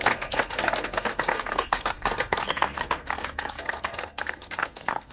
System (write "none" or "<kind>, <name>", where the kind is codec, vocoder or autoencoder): codec, SNAC